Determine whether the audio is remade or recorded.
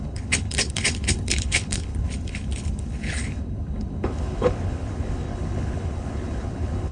remade